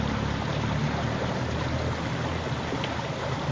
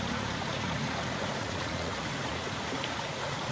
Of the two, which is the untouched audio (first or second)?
first